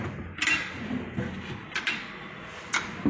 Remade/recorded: recorded